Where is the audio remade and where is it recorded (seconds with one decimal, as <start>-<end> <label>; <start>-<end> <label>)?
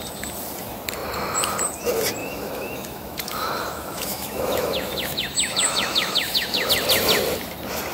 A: 0.0-2.2 recorded; 2.2-6.7 remade; 6.7-7.9 recorded